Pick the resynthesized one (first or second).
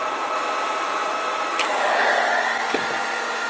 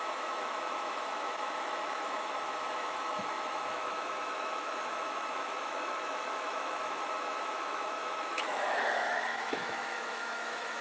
second